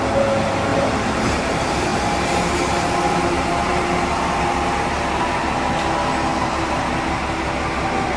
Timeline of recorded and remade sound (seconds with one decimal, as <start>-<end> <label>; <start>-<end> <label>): 0.0-0.7 recorded; 0.7-1.5 remade; 1.5-1.9 recorded; 1.9-4.4 remade; 4.4-6.3 recorded; 6.3-7.2 remade; 7.2-8.2 recorded